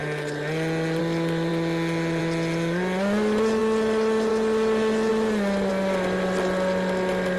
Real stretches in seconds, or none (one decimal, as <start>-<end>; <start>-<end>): 0.0-7.4